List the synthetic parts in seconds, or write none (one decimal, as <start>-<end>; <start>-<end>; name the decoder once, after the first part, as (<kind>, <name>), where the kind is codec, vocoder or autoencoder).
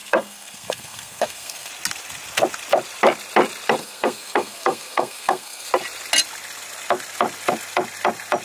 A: 0.0-1.7 (codec, SNAC); 3.8-5.7